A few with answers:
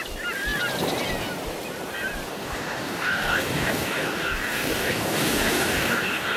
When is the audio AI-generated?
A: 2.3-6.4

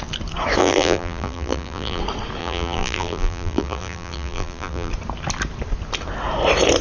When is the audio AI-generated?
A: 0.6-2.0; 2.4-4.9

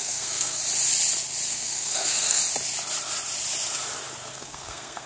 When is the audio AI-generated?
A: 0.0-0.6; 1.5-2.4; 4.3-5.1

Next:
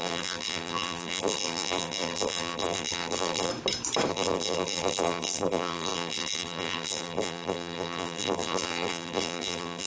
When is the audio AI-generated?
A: 0.0-3.5; 4.1-9.9